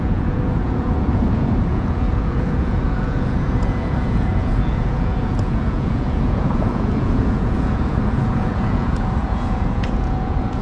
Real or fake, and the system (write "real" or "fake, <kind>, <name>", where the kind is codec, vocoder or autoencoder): fake, vocoder, Vocos